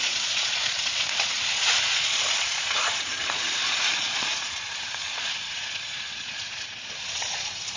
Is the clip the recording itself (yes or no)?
no